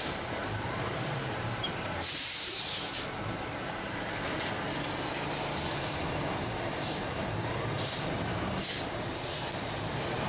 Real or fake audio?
fake